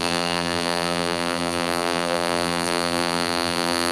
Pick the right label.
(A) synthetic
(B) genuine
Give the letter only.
A